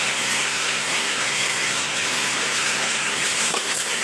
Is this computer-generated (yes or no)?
yes